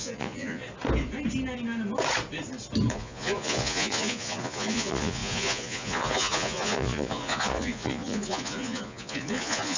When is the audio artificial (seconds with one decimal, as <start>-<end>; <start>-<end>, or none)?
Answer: 0.0-0.6; 2.9-9.8